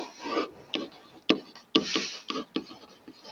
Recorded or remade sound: recorded